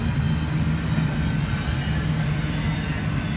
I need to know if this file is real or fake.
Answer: real